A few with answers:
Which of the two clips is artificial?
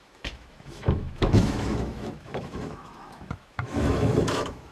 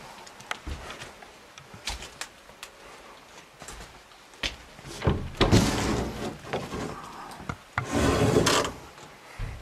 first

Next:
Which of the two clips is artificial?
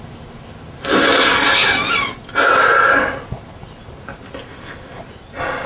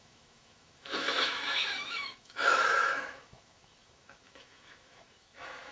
second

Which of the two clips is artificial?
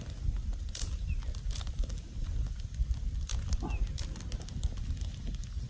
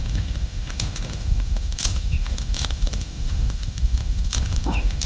second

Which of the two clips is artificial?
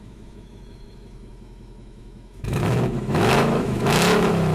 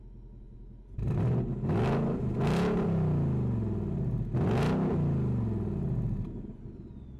first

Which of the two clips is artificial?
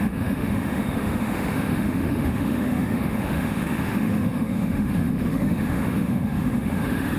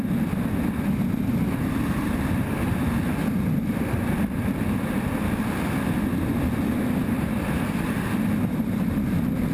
first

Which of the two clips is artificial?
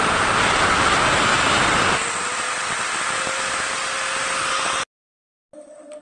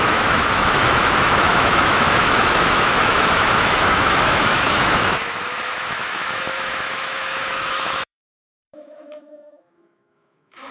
second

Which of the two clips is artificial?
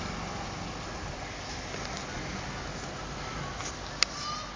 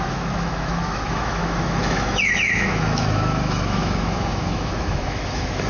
second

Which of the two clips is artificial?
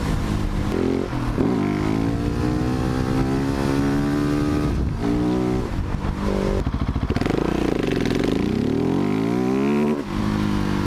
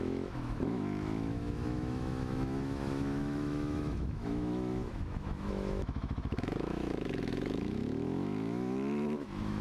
second